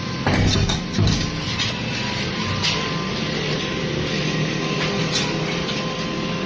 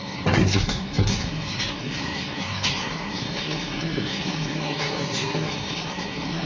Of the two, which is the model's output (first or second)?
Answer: second